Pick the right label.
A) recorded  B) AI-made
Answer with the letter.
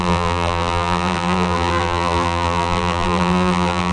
B